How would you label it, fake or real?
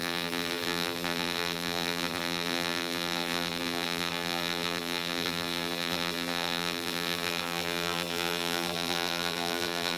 fake